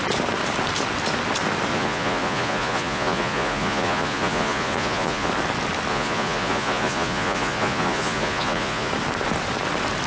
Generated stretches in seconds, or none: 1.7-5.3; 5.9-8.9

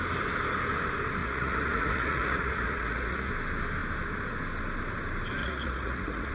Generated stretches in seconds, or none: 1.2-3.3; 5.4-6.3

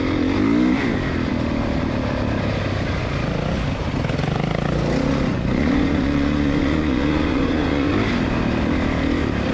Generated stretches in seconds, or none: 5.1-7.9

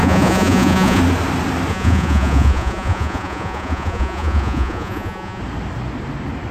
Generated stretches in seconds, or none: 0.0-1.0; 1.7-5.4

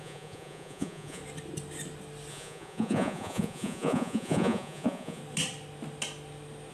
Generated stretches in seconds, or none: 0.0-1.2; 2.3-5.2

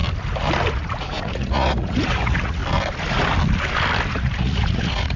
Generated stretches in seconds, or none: 0.7-2.6; 4.1-5.2